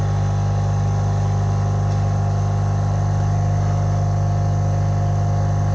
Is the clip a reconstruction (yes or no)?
no